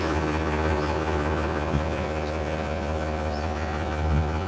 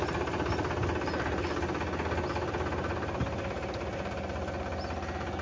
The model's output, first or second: first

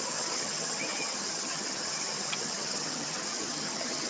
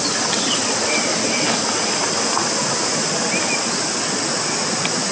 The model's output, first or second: first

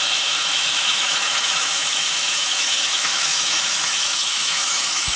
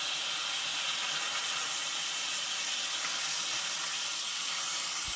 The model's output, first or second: first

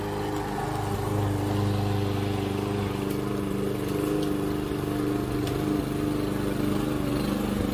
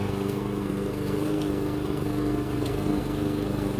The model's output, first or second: second